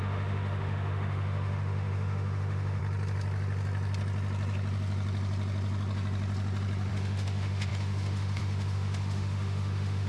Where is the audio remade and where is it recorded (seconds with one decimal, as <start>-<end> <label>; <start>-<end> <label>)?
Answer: 0.0-2.8 remade; 2.8-6.9 recorded; 6.9-10.1 remade